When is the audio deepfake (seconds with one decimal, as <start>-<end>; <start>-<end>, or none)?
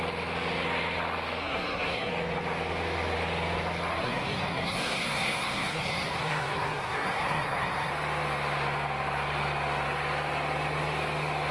1.4-2.1; 3.9-7.9